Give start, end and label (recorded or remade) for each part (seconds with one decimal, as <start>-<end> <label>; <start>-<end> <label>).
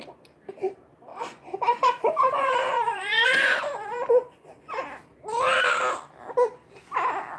0.0-1.1 recorded; 1.1-4.8 remade; 4.8-7.4 recorded